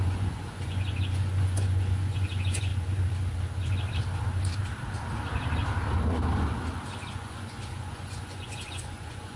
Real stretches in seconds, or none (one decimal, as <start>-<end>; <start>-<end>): 2.7-7.1